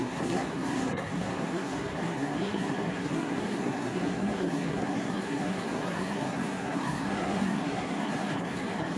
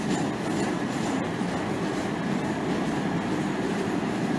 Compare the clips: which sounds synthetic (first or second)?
first